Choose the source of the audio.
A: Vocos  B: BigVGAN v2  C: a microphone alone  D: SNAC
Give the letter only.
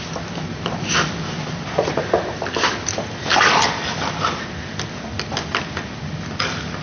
C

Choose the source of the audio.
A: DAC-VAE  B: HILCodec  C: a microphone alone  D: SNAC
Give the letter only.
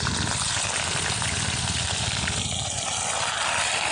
C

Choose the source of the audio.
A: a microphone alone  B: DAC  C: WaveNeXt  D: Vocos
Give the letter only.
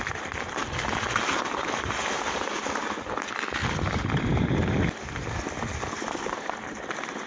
A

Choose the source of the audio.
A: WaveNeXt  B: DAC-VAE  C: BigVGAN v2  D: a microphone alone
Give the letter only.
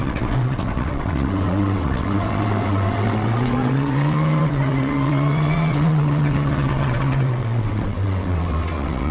A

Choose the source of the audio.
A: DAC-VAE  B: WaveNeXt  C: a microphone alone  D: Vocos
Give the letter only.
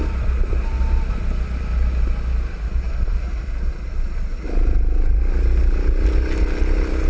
C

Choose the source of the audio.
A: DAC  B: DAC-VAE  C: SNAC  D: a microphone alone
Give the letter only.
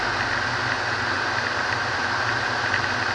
D